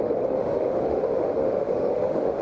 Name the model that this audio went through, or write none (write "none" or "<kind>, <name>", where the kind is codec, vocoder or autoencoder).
autoencoder, DAC-VAE